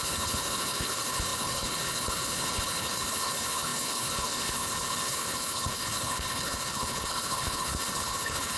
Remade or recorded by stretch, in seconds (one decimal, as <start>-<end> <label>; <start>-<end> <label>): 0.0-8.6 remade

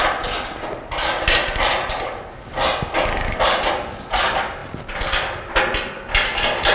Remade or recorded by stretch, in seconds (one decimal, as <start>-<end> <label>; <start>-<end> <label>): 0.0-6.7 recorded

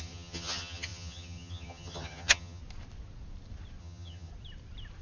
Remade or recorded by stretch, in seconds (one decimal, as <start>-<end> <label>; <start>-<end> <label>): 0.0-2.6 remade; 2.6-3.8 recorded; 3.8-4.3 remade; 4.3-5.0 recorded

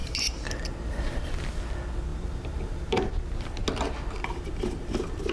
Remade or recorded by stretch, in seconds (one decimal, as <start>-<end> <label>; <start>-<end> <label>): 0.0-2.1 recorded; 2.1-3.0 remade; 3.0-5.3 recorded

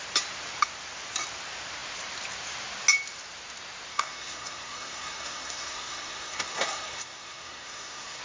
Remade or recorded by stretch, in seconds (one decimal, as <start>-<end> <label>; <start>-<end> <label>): 0.0-3.9 recorded; 3.9-8.2 remade

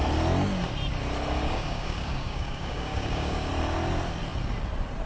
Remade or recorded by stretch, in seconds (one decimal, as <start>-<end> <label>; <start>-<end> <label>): 0.0-1.4 recorded; 1.4-3.5 remade; 3.5-5.1 recorded